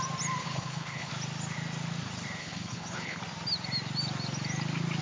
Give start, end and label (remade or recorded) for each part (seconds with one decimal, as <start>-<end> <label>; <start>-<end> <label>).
0.0-0.4 recorded; 0.4-1.1 remade; 1.1-2.4 recorded; 2.4-3.2 remade; 3.2-5.0 recorded